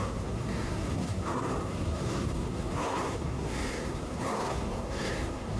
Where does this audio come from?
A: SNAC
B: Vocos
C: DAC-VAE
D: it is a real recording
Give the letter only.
A